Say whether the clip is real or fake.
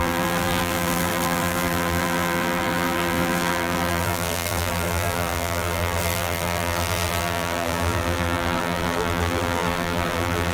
fake